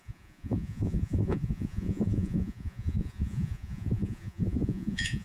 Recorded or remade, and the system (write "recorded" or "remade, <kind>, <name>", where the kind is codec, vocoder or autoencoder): remade, vocoder, Vocos